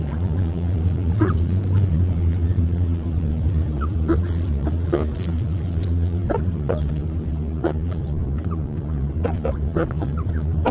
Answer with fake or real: fake